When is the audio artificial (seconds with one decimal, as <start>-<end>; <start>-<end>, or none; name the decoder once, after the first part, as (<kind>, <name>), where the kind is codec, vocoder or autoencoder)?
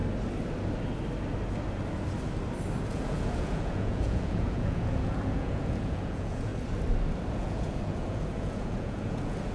2.8-6.5 (vocoder, Vocos); 7.3-9.5